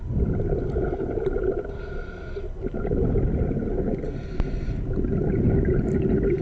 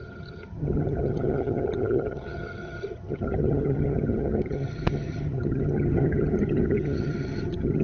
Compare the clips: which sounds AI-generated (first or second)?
second